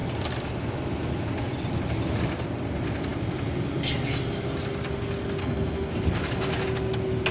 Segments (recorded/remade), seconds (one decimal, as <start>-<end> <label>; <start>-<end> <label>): 0.0-5.4 recorded; 5.4-5.9 remade; 5.9-7.3 recorded